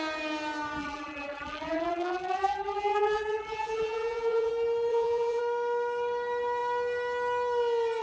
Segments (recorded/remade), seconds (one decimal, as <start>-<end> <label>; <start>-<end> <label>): 0.0-0.8 recorded; 0.8-4.5 remade; 4.5-4.9 recorded; 4.9-5.4 remade; 5.4-8.0 recorded